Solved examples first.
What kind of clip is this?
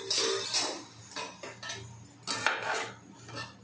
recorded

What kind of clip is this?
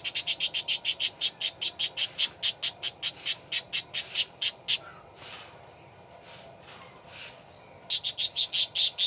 recorded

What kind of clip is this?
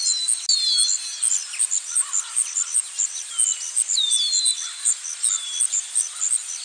recorded